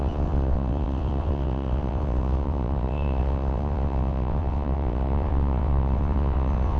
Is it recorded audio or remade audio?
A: remade